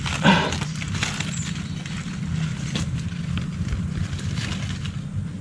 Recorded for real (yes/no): yes